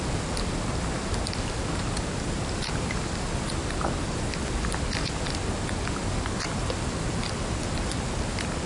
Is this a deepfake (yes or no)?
no